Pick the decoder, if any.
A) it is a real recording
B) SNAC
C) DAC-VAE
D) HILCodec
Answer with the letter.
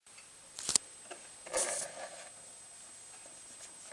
A